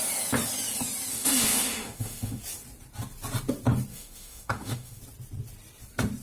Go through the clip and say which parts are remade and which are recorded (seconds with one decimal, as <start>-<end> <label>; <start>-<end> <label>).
0.0-1.1 recorded; 1.1-2.4 remade; 2.4-3.9 recorded; 3.9-5.0 remade; 5.0-6.2 recorded